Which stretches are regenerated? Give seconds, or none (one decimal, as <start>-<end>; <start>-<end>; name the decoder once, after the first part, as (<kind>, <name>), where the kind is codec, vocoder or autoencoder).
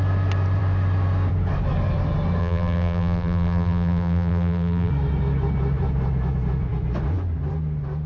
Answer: 2.4-4.9 (vocoder, BigVGAN v2)